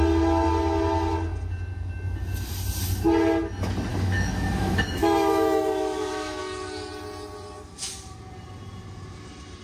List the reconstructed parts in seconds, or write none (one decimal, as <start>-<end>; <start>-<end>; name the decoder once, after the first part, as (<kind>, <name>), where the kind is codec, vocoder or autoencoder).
3.9-6.4 (autoencoder, DAC-VAE)

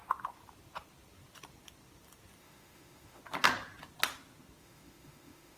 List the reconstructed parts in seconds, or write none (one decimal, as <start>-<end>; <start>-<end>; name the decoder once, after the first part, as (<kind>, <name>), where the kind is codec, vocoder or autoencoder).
2.4-3.2 (autoencoder, DAC-VAE); 4.6-5.6